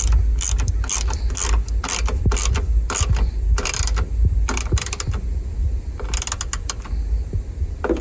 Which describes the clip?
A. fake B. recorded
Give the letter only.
B